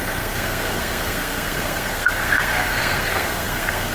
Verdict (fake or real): fake